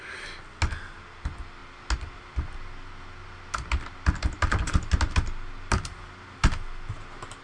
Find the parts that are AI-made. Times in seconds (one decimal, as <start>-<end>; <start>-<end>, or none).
none